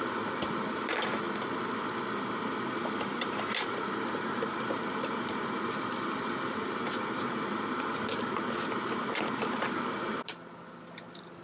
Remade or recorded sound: recorded